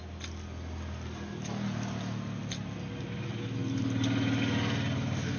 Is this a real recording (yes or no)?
yes